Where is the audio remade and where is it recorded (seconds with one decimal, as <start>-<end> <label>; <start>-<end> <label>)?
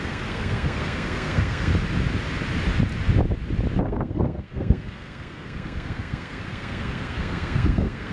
0.0-1.7 remade; 1.7-3.8 recorded; 3.8-8.1 remade